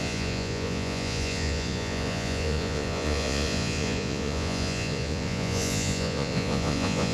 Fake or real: fake